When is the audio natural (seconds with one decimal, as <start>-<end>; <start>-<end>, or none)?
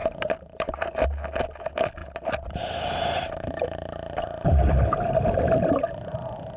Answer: 1.0-2.0; 6.0-6.6